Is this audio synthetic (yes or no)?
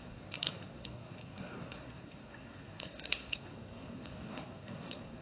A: yes